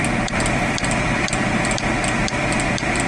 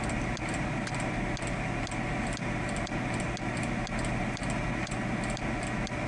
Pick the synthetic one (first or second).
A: first